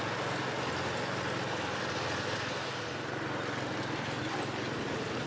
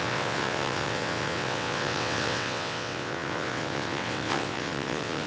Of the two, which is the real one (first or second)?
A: first